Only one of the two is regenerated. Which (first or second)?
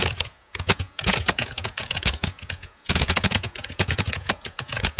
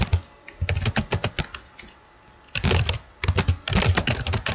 first